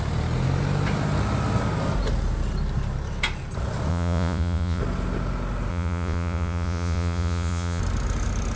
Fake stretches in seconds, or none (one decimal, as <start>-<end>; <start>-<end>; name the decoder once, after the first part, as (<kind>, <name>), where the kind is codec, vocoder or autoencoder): 3.9-4.8 (vocoder, Vocos); 5.7-7.8